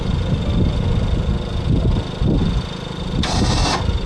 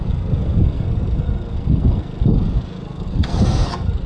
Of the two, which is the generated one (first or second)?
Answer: second